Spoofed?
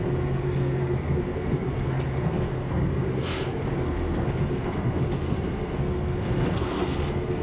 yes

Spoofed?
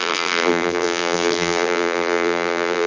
yes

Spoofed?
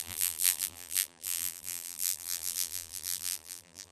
yes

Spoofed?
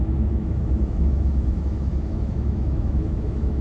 yes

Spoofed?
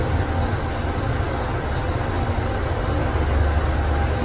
no